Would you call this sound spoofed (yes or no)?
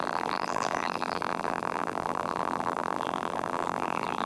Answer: yes